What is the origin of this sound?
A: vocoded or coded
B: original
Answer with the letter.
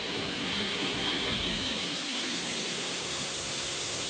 A